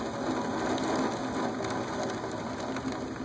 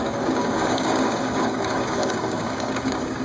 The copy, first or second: second